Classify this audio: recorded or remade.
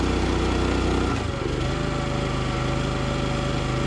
recorded